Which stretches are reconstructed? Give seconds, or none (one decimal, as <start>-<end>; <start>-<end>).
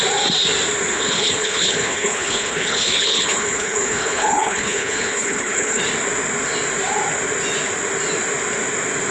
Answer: 0.9-5.8